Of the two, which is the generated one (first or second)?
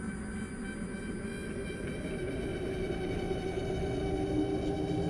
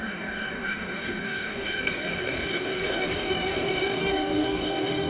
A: second